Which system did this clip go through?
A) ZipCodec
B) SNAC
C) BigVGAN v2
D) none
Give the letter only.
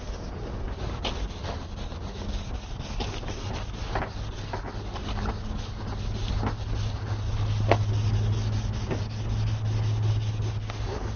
D